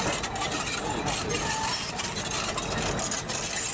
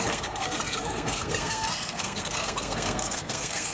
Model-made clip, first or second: second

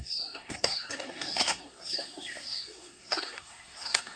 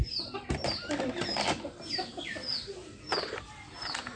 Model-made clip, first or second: first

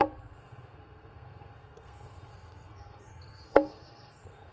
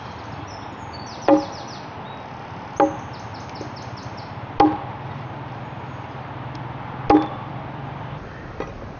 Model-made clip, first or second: first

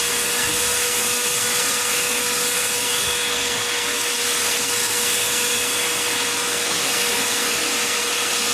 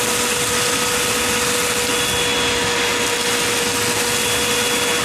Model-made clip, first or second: first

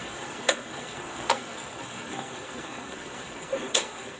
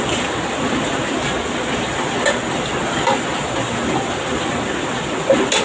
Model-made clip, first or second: first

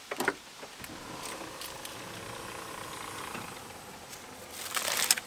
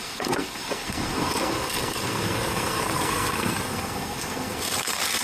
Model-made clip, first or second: second